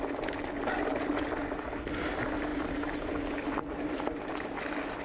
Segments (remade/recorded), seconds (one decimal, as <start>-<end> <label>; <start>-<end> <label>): 0.0-5.0 recorded